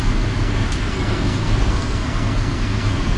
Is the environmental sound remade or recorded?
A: remade